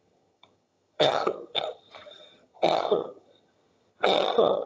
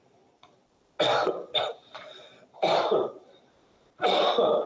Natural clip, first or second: second